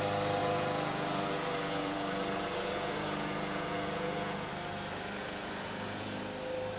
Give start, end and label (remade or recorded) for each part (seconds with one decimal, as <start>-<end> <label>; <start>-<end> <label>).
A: 0.0-0.4 recorded; 0.4-4.5 remade; 4.5-5.2 recorded; 5.2-6.2 remade; 6.2-6.8 recorded